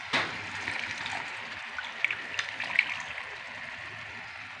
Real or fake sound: real